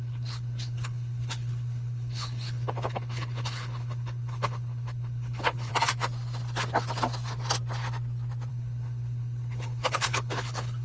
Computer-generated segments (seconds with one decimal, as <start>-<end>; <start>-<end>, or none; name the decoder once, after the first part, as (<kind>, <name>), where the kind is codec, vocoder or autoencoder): 0.0-5.7 (codec, HILCodec); 8.5-10.8